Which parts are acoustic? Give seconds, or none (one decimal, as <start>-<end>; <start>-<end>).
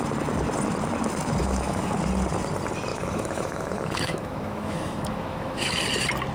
0.0-1.4; 1.9-2.9; 5.8-6.3